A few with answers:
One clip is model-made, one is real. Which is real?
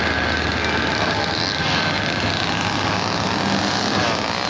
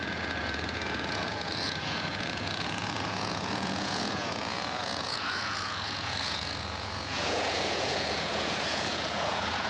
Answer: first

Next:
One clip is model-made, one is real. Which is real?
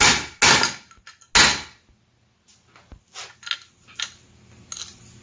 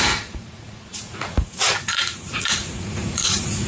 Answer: first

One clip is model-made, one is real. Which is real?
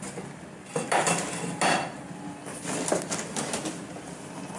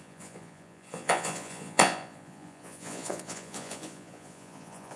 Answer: first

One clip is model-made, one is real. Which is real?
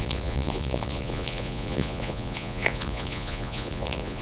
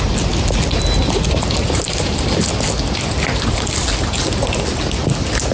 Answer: second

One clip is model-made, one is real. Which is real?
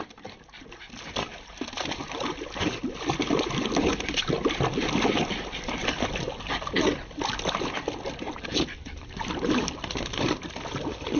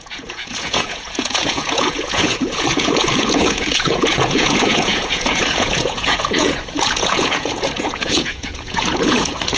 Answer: first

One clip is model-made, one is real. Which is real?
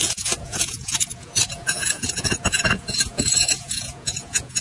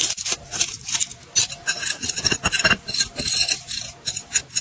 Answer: second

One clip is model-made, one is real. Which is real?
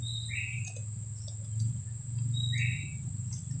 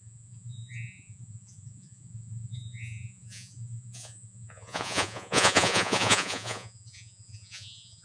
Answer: first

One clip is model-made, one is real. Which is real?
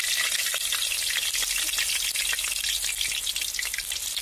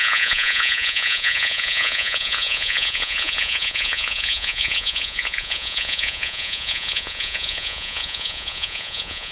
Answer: first